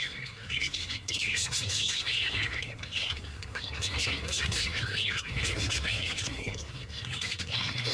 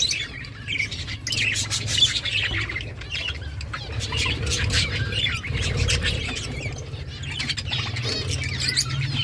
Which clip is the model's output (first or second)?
first